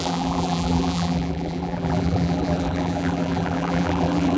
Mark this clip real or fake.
fake